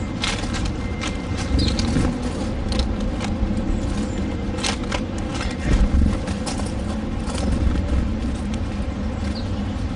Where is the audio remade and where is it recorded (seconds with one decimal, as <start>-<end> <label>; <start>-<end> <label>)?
0.0-10.0 recorded